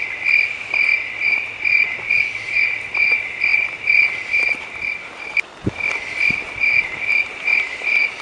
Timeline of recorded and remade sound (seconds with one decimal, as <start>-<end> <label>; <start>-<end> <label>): 0.0-8.2 recorded